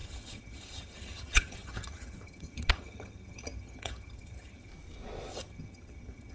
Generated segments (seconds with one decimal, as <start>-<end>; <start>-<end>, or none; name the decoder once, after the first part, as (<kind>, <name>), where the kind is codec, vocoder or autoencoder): 0.0-4.7 (vocoder, HiFi-GAN); 5.3-6.3